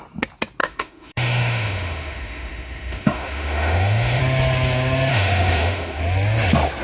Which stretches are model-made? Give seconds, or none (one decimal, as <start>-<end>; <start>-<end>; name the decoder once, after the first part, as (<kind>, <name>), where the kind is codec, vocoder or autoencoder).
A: 0.6-4.2 (autoencoder, DAC-VAE); 5.1-6.0